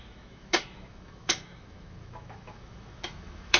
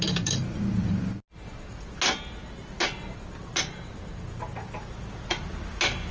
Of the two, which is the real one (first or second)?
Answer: second